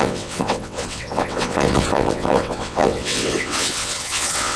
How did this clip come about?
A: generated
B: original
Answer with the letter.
A